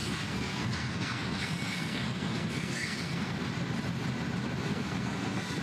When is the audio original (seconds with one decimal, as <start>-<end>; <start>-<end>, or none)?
3.4-4.7